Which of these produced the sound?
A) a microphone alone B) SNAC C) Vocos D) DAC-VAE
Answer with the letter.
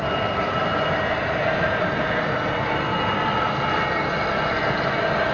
A